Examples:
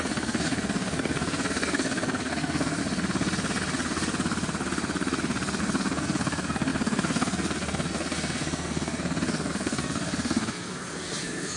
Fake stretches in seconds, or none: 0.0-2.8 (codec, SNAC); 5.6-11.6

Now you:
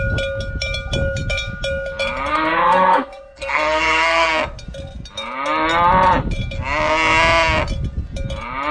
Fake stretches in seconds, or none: 2.3-4.3 (codec, SNAC)

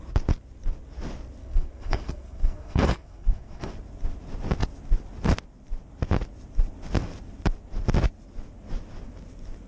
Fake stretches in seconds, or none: 1.4-3.7 (codec, SNAC)

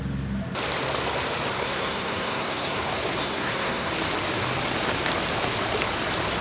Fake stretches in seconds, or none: 1.6-2.8 (codec, SNAC); 3.2-3.9

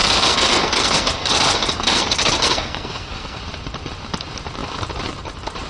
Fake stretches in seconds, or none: 0.0-3.4 (codec, SNAC)

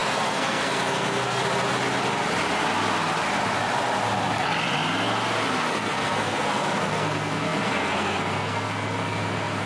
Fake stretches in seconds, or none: 0.0-1.4 (codec, SNAC); 5.7-9.7